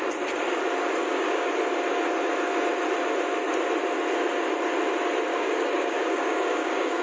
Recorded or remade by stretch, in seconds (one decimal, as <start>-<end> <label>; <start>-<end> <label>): 0.0-1.0 recorded; 1.0-1.5 remade; 1.5-5.3 recorded; 5.3-7.0 remade